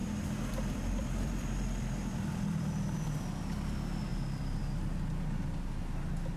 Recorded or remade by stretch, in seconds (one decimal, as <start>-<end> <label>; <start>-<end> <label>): 0.0-3.2 remade; 3.2-4.1 recorded; 4.1-4.6 remade; 4.6-6.4 recorded